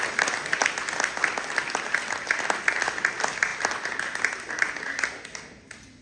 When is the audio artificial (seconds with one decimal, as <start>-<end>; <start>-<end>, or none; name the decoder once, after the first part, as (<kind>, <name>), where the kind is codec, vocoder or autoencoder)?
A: none